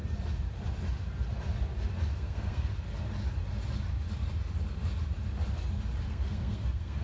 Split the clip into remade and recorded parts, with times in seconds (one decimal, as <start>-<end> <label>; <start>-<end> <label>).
0.0-2.1 recorded; 2.1-2.7 remade; 2.7-6.1 recorded; 6.1-7.0 remade